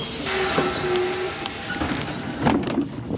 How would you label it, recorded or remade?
recorded